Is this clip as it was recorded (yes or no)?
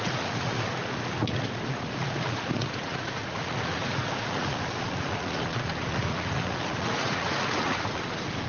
no